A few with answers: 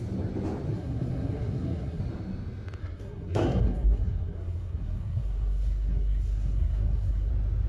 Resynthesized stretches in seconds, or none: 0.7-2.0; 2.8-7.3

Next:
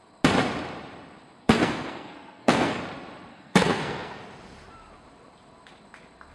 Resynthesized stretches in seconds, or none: 1.4-2.8; 3.3-4.2